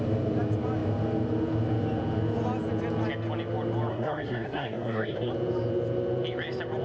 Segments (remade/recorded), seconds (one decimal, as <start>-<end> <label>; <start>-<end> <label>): 0.0-3.9 recorded; 3.9-5.3 remade; 5.3-6.8 recorded